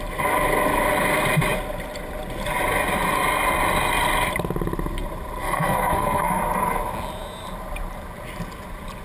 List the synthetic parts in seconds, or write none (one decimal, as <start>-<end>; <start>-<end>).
5.4-6.4